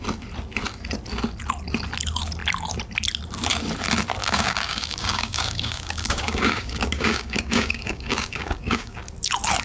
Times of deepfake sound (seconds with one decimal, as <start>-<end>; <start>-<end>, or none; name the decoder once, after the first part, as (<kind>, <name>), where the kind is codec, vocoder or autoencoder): 4.2-9.0 (codec, DAC)